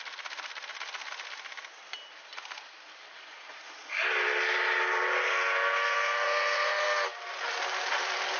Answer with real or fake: real